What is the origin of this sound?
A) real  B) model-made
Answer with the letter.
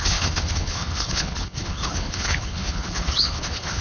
B